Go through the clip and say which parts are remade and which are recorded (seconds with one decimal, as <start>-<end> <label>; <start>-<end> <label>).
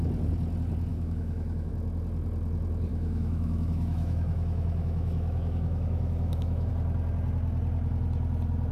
0.0-0.9 recorded; 0.9-1.7 remade; 1.7-2.9 recorded; 2.9-6.7 remade; 6.7-8.7 recorded